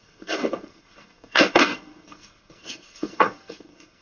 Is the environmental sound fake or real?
fake